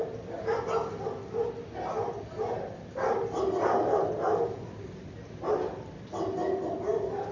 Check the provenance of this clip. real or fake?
real